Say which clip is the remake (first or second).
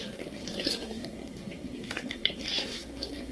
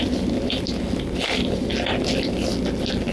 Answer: first